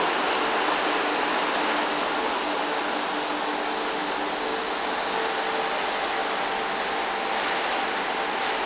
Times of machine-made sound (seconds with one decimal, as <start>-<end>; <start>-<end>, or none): none